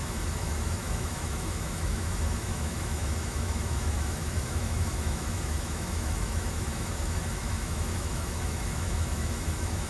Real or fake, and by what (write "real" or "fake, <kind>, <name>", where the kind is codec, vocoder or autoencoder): fake, autoencoder, DAC-VAE